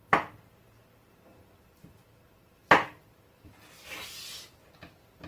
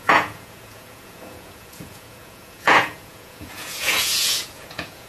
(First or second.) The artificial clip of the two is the second